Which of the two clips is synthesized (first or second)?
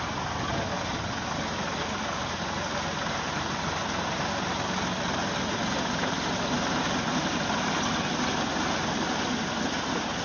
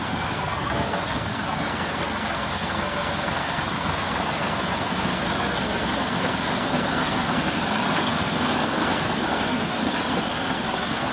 second